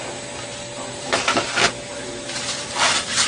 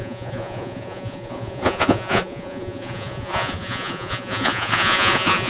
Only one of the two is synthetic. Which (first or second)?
second